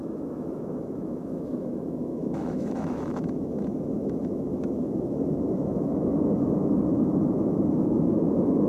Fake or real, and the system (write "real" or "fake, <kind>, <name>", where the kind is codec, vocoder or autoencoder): fake, autoencoder, DAC-VAE